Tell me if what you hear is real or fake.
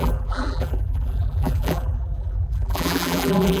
fake